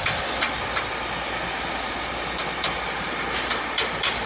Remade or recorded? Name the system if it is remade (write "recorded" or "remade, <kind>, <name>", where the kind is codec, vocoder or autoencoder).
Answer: recorded